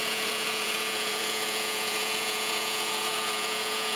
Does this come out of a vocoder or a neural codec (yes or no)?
yes